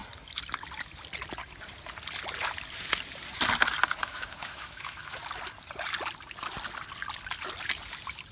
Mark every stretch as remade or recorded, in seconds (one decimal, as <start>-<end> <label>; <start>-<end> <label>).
0.0-4.0 recorded; 4.0-5.2 remade; 5.2-8.3 recorded